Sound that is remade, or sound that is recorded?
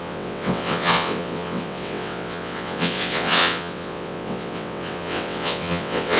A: remade